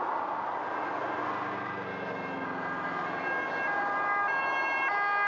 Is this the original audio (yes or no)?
yes